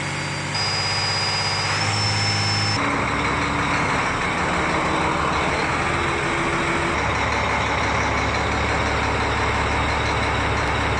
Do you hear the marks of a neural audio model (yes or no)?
no